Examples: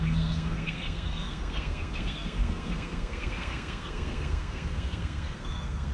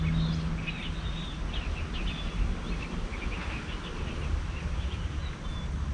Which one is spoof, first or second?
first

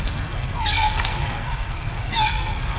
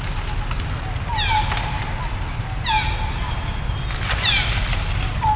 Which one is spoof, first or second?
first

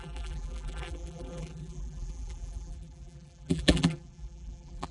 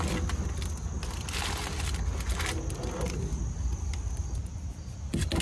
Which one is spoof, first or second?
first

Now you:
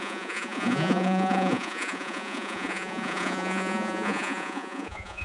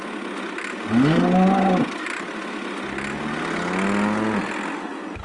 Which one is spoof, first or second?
first